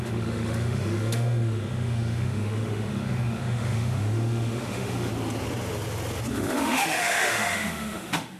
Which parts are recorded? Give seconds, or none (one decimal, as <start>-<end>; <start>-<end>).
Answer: 5.1-6.3